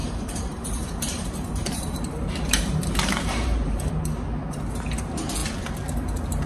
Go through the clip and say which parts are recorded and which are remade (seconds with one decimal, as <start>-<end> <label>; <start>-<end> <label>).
0.0-3.9 remade; 3.9-6.5 recorded